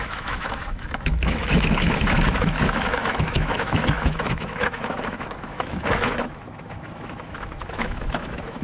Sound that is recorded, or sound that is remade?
remade